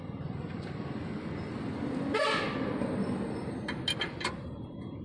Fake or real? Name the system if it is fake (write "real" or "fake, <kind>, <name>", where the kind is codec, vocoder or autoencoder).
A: real